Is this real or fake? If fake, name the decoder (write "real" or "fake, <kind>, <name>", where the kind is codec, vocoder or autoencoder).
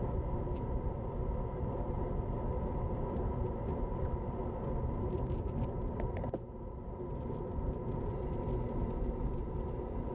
real